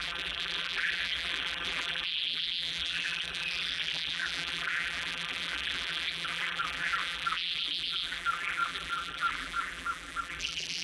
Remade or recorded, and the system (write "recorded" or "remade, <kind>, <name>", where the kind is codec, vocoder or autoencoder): remade, vocoder, BigVGAN v2